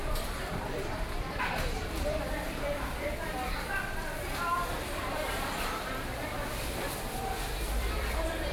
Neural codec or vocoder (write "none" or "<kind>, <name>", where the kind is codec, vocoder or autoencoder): vocoder, BigVGAN v2